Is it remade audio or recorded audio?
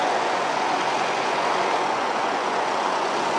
remade